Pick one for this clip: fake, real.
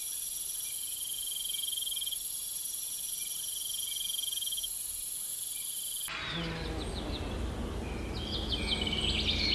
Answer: real